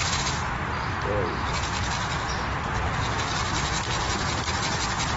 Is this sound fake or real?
real